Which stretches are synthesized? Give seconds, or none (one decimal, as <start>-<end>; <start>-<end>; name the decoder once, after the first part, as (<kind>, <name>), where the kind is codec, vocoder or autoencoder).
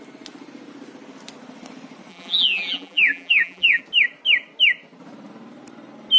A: 2.1-3.8 (vocoder, BigVGAN v2)